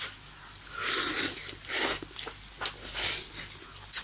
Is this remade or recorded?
recorded